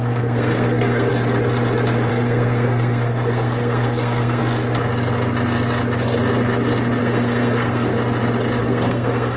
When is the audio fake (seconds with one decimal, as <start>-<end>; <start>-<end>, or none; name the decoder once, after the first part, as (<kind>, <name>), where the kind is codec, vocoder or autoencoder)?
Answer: 0.0-1.1 (codec, SNAC); 2.1-4.4; 7.0-7.9; 8.6-9.4